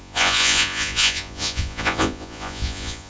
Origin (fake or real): fake